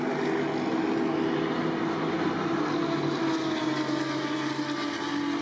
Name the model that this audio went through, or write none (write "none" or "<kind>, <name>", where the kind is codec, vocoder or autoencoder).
none